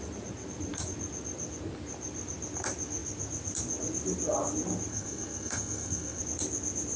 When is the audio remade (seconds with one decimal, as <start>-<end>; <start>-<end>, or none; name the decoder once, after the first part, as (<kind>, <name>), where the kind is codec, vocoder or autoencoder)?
4.9-6.2 (codec, SNAC)